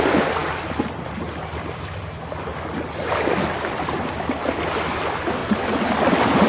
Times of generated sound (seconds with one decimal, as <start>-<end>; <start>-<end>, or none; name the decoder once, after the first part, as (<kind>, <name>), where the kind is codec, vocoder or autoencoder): none